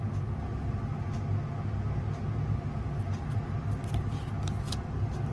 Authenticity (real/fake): real